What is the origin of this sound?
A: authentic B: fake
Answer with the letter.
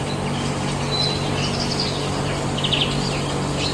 A